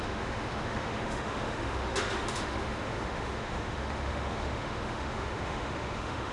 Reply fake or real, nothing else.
fake